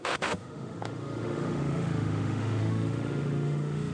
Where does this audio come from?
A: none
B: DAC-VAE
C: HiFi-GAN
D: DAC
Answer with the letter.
B